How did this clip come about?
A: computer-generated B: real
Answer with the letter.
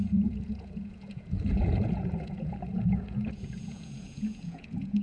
A